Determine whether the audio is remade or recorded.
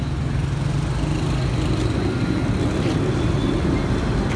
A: recorded